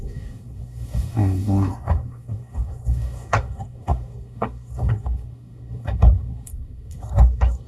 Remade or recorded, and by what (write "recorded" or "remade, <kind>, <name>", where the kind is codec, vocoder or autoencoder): remade, codec, SNAC